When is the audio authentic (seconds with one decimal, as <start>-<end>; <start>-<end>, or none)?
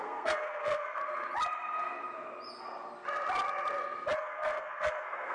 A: 1.0-4.2